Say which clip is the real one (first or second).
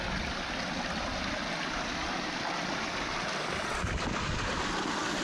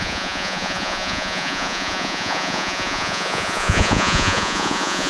first